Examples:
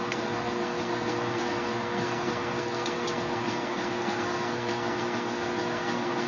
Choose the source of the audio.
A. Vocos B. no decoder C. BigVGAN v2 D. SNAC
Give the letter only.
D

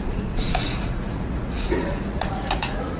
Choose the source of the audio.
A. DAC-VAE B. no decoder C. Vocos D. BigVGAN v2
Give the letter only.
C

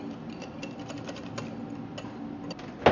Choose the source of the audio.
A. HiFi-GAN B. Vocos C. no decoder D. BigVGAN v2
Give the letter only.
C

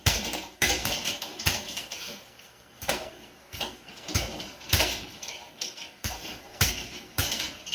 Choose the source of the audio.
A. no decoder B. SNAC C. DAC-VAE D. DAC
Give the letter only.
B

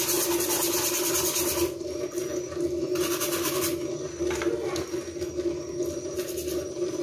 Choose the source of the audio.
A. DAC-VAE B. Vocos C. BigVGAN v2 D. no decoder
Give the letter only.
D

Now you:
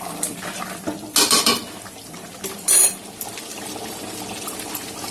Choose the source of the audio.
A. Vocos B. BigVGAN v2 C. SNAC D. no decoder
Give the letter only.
D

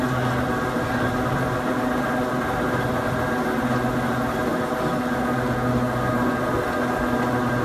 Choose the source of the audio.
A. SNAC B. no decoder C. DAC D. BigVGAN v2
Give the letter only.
B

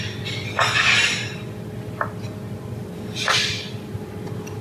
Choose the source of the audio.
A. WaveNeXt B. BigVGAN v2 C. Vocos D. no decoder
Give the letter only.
D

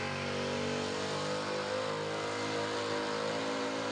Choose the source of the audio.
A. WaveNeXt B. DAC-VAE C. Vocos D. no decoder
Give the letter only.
D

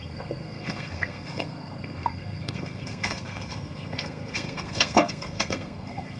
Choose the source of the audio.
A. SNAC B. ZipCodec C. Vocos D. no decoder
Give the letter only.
A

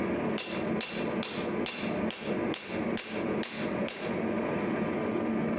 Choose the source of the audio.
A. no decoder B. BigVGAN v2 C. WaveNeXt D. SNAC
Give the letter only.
A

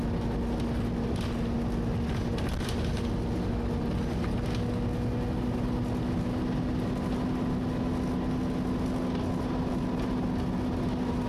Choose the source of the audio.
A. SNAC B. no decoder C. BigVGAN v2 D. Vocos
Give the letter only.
B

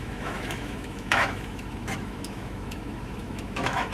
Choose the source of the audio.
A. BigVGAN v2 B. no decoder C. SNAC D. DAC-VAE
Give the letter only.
D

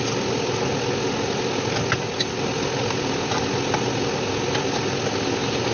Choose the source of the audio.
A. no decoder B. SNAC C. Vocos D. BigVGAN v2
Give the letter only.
A